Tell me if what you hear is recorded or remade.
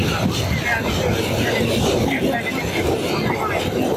recorded